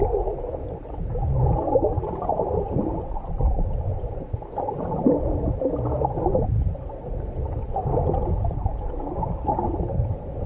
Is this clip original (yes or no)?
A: yes